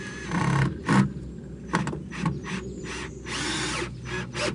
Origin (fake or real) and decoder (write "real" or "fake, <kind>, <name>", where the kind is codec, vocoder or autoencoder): real